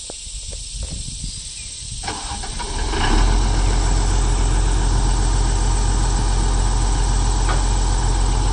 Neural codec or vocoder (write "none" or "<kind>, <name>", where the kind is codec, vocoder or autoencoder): none